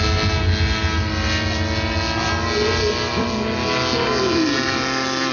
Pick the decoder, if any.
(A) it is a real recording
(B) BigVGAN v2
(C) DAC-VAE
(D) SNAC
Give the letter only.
A